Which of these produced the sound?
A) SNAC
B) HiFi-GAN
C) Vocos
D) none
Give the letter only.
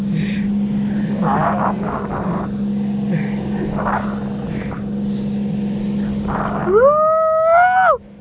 D